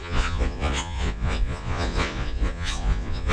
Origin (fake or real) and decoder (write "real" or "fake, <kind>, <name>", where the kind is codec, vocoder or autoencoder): fake, vocoder, Vocos